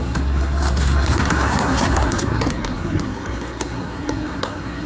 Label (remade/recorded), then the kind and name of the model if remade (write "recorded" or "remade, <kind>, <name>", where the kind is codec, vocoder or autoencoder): remade, codec, SNAC